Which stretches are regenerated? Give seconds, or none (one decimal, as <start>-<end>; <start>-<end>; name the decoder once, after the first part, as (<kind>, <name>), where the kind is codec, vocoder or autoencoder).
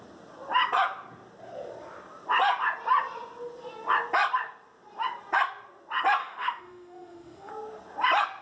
6.2-7.5 (autoencoder, DAC-VAE)